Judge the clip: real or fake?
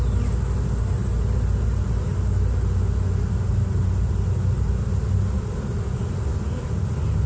real